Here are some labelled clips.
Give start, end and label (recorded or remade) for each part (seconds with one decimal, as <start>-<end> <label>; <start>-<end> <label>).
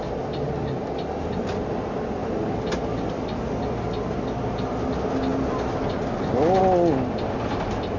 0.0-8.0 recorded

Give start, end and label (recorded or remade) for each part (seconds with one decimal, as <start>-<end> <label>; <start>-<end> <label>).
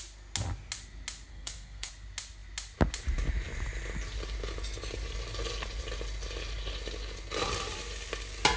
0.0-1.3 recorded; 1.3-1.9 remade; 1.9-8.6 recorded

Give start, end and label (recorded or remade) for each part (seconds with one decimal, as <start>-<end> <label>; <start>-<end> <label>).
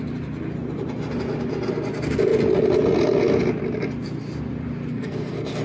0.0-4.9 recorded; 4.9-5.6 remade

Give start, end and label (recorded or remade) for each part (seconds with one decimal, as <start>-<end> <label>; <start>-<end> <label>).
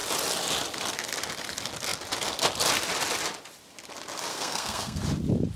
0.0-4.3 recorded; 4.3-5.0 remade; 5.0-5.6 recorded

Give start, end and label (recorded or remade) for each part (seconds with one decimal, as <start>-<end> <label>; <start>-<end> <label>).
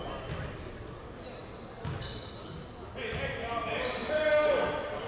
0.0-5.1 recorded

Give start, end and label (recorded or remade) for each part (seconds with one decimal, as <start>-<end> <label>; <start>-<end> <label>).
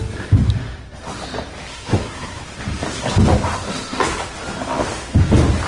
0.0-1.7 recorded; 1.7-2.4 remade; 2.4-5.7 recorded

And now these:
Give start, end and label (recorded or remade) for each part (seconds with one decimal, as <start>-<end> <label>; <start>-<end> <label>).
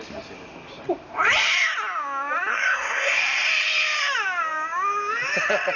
0.0-2.5 recorded; 2.5-3.2 remade; 3.2-5.8 recorded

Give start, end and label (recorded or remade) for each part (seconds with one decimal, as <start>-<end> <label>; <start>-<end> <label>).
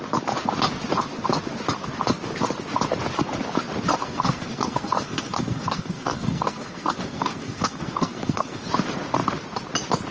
0.0-4.0 recorded; 4.0-8.7 remade; 8.7-10.1 recorded